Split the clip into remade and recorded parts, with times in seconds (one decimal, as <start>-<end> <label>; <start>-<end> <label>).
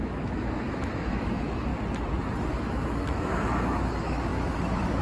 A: 0.0-1.7 remade; 1.7-2.5 recorded; 2.5-5.0 remade